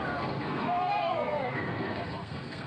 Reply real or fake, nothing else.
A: fake